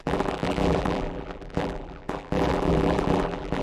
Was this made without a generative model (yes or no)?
no